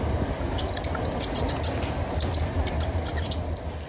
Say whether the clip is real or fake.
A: real